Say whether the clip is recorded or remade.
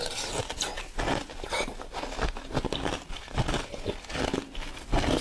recorded